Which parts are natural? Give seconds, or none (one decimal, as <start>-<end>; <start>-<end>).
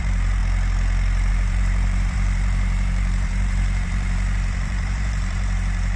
0.4-1.3